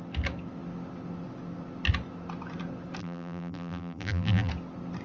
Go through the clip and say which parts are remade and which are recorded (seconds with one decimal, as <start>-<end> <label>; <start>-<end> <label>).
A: 0.0-3.0 recorded; 3.0-4.5 remade; 4.5-5.0 recorded